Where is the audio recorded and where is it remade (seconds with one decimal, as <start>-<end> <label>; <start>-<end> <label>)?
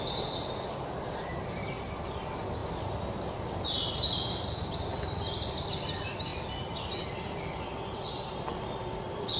0.0-9.4 recorded